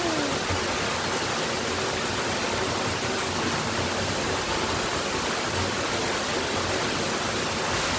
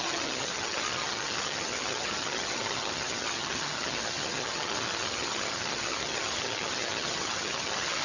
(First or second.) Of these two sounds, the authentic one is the first